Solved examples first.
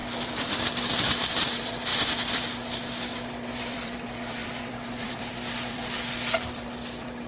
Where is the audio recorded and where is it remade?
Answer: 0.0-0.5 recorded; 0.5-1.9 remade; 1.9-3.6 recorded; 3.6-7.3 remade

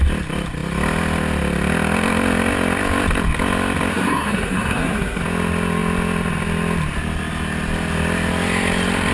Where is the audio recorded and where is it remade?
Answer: 0.0-3.9 recorded; 3.9-5.2 remade; 5.2-9.1 recorded

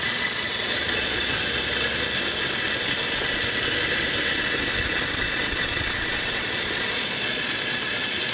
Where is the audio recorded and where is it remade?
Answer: 0.0-1.4 remade; 1.4-5.2 recorded; 5.2-8.3 remade

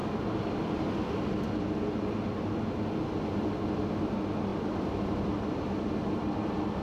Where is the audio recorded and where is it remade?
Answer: 0.0-1.0 remade; 1.0-4.5 recorded; 4.5-5.4 remade; 5.4-6.8 recorded

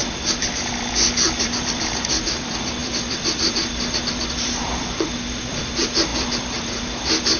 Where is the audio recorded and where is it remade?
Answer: 0.0-7.4 remade

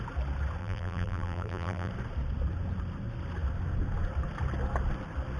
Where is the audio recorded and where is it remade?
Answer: 0.0-0.6 recorded; 0.6-1.9 remade; 1.9-5.4 recorded